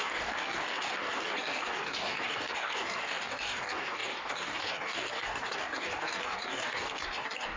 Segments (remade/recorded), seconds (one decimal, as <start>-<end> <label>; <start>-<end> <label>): 0.0-7.6 remade